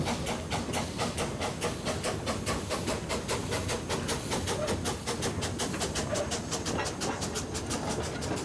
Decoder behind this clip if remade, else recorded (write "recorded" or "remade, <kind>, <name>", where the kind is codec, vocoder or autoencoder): recorded